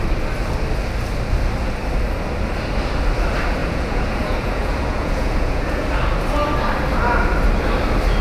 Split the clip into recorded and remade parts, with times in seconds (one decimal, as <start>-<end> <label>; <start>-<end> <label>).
0.0-3.6 recorded; 3.6-5.9 remade; 5.9-8.2 recorded